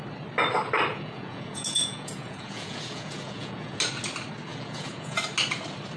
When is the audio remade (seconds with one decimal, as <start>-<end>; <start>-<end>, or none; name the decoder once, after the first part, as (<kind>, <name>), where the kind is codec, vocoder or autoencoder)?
0.9-3.8 (vocoder, Vocos); 4.5-5.2